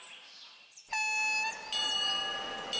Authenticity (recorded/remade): recorded